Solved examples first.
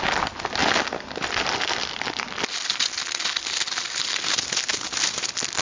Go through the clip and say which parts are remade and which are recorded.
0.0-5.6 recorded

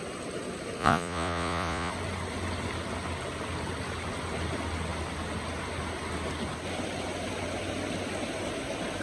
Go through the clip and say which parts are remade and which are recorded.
0.0-0.8 recorded; 0.8-1.9 remade; 1.9-9.0 recorded